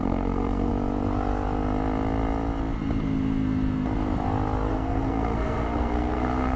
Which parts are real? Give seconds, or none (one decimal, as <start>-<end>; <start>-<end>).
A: 0.7-4.7